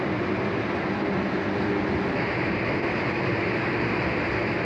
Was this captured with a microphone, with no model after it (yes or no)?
yes